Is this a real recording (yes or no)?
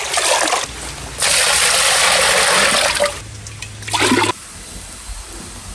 yes